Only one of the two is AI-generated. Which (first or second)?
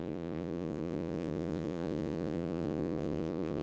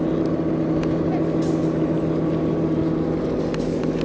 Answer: first